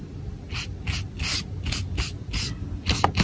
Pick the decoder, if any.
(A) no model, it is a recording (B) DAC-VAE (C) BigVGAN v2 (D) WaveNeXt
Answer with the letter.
A